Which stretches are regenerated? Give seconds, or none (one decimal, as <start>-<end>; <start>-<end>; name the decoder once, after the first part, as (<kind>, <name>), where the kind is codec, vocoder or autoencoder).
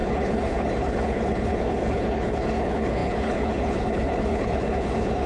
0.0-5.3 (codec, HILCodec)